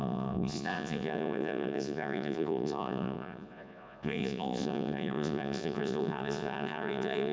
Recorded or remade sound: remade